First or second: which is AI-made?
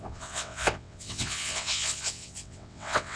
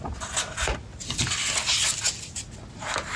first